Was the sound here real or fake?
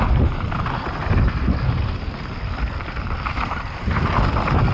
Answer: real